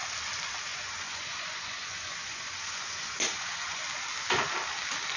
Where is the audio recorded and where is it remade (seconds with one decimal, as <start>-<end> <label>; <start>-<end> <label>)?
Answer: 0.0-0.7 recorded; 0.7-3.8 remade; 3.8-5.2 recorded